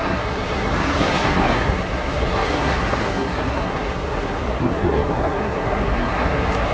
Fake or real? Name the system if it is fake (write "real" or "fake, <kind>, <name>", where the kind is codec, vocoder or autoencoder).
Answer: fake, codec, SNAC